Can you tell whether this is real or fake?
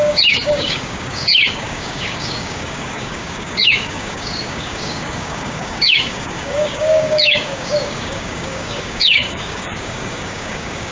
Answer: fake